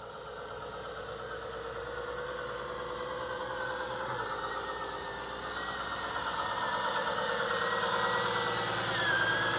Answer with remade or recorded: recorded